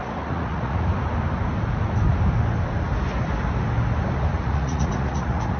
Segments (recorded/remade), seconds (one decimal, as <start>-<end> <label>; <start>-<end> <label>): 0.0-0.9 remade; 0.9-4.3 recorded; 4.3-5.6 remade